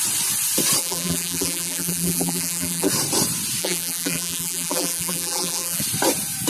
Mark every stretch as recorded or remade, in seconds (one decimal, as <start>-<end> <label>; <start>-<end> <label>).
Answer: 0.0-0.8 recorded; 0.8-2.9 remade; 2.9-3.6 recorded; 3.6-5.8 remade; 5.8-6.5 recorded